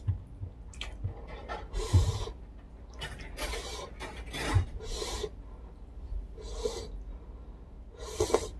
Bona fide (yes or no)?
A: yes